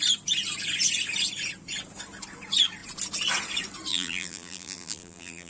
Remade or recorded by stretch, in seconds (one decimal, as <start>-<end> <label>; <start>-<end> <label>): 0.0-3.9 recorded; 3.9-5.5 remade